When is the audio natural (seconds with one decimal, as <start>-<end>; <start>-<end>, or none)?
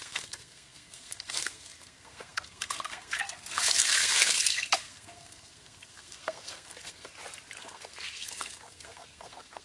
7.1-7.6